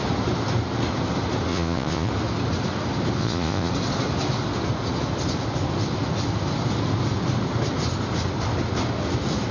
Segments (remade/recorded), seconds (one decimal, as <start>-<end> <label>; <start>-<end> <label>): 0.0-1.5 recorded; 1.5-2.1 remade; 2.1-3.2 recorded; 3.2-3.7 remade; 3.7-9.5 recorded